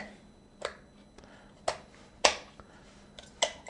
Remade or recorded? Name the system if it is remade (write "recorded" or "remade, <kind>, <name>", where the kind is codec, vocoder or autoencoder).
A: recorded